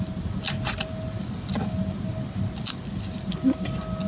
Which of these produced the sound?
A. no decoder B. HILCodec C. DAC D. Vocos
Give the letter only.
A